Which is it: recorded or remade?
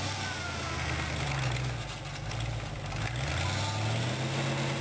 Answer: recorded